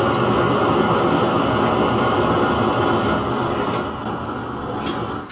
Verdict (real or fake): real